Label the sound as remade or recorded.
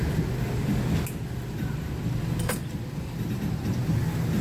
recorded